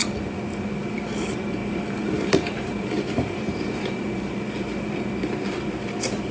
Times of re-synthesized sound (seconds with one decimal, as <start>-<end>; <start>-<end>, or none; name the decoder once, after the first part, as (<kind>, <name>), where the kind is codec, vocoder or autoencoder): 1.6-4.3 (vocoder, BigVGAN v2)